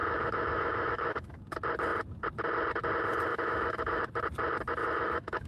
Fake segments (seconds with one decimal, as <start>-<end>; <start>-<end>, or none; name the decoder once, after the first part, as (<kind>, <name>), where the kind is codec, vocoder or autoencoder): 0.0-1.4 (autoencoder, DAC-VAE); 3.3-4.0; 4.8-5.5